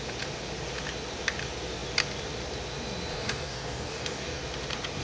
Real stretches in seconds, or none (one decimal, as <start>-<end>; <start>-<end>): 0.0-3.1; 4.4-5.0